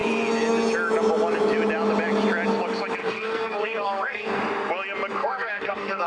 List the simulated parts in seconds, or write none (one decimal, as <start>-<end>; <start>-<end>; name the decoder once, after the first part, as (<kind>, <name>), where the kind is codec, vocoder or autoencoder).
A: 3.0-4.4 (codec, SNAC); 5.2-6.1